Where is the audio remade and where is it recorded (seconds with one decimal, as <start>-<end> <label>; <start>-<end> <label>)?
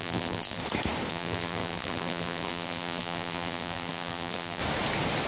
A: 0.0-0.6 remade; 0.6-1.1 recorded; 1.1-4.6 remade; 4.6-5.3 recorded